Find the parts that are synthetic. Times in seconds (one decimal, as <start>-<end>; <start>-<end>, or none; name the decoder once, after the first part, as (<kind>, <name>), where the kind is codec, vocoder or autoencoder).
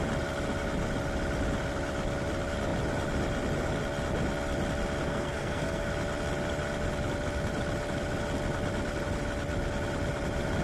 5.0-5.9 (codec, SNAC)